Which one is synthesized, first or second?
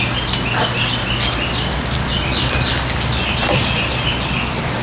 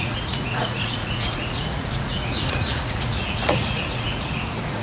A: second